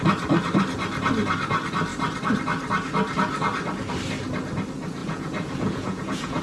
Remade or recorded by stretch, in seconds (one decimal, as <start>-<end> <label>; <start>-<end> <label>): 0.0-5.0 recorded; 5.0-6.4 remade